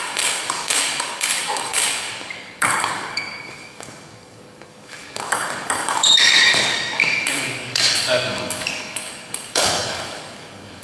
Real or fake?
fake